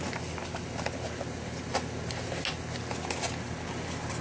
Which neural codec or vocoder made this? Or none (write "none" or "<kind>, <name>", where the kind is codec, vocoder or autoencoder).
none